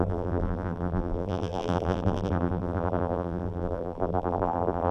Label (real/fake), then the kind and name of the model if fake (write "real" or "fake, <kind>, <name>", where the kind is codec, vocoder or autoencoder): fake, vocoder, BigVGAN v2